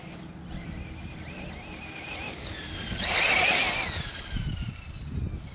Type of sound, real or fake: real